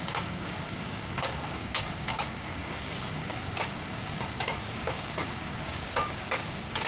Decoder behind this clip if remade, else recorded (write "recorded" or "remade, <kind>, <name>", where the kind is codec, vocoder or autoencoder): remade, codec, DAC